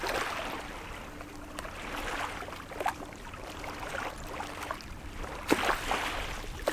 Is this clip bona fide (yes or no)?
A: yes